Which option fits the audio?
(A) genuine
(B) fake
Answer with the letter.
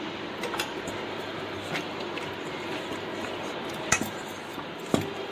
B